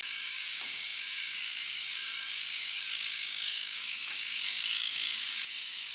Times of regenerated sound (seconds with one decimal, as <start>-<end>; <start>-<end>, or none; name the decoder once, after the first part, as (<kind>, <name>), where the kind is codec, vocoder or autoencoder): 0.0-5.9 (codec, DAC)